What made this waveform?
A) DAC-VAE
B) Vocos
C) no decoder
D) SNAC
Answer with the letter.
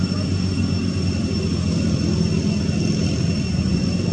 C